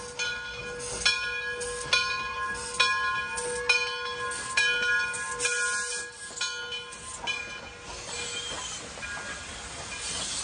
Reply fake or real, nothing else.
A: real